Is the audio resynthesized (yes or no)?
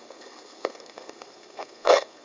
yes